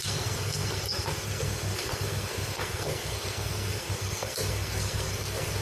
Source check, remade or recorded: remade